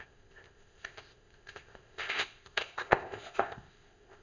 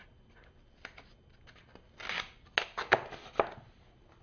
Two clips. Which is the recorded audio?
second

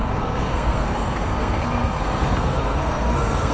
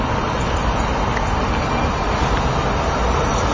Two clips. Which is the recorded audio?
second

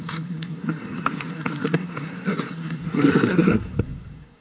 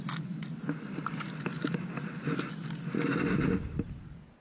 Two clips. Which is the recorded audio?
second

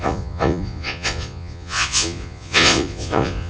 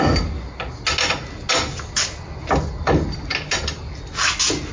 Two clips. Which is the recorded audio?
second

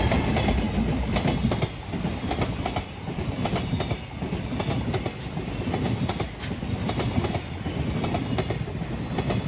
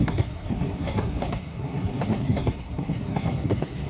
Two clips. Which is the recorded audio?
first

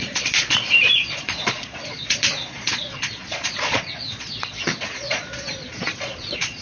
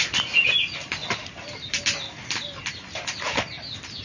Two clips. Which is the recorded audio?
second